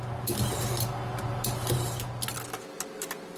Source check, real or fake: real